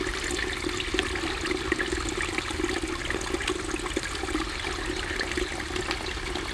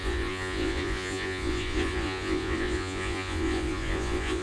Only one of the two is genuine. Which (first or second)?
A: first